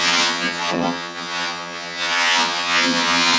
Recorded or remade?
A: remade